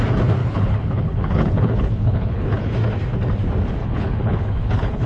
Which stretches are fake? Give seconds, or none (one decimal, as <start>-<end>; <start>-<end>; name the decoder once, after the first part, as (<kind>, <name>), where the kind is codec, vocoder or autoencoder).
0.4-2.7 (codec, HILCodec); 3.8-5.1